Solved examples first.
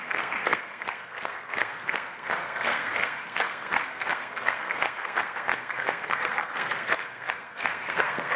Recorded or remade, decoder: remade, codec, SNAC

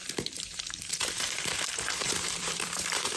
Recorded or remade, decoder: remade, vocoder, BigVGAN v2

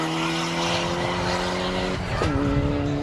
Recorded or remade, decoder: recorded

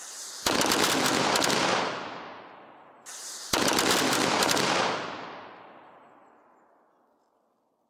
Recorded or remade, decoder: recorded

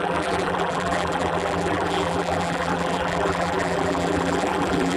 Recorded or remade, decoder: remade, vocoder, BigVGAN v2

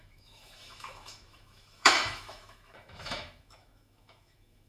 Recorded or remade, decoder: remade, autoencoder, DAC-VAE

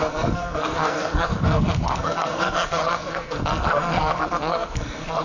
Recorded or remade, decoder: remade, codec, SNAC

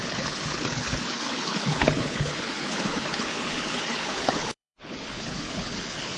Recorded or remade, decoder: remade, codec, HILCodec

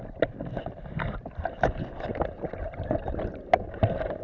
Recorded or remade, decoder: recorded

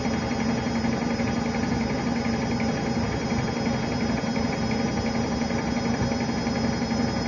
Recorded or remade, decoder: recorded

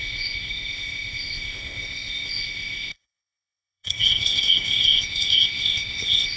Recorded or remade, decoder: remade, codec, ZipCodec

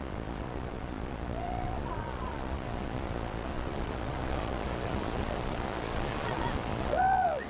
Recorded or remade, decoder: remade, vocoder, Vocos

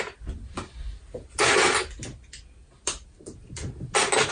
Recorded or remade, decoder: recorded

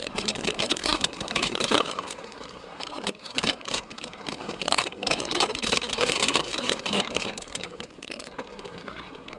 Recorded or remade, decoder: remade, codec, SNAC